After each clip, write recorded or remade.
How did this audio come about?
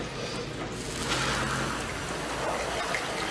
recorded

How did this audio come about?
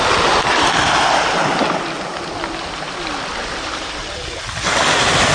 recorded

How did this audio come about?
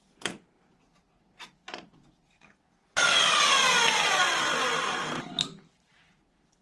recorded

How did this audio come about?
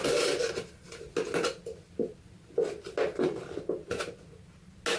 recorded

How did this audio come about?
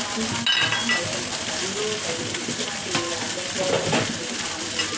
recorded